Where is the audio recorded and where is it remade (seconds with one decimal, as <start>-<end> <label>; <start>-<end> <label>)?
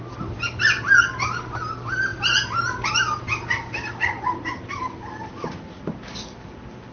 0.0-6.9 recorded